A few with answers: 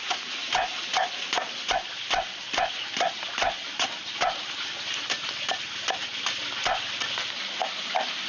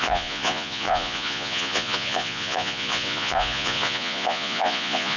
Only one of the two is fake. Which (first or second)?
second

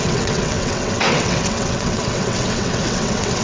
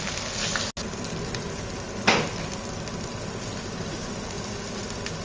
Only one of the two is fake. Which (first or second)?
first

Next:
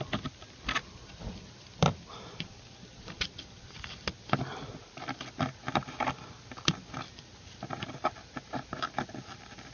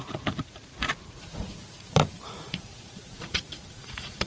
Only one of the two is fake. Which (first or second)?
second